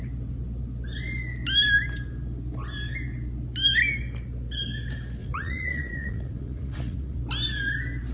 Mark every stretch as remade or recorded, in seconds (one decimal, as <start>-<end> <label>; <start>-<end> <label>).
0.0-5.2 recorded; 5.2-7.2 remade; 7.2-8.1 recorded

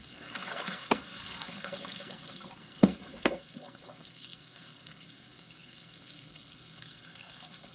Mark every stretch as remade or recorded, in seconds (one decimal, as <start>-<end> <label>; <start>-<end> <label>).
0.0-7.7 remade